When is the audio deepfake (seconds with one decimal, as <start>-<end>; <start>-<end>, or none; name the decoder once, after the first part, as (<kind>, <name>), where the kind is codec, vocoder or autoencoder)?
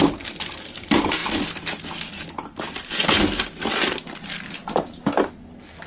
none